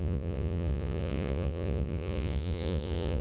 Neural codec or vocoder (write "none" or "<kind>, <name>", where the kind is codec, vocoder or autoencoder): vocoder, Vocos